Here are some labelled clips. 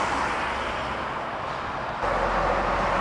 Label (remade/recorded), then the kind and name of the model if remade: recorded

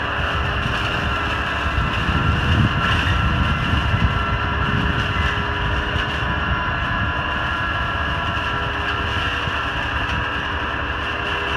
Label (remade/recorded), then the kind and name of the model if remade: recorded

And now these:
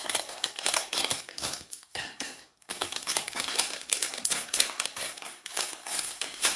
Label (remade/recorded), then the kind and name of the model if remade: remade, codec, SNAC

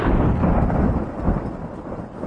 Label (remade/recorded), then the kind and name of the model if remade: recorded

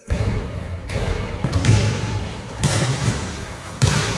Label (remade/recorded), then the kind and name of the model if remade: remade, codec, SNAC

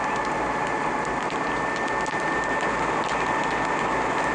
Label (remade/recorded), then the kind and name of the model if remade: recorded